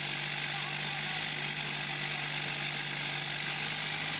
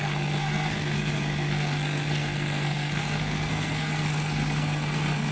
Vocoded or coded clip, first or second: second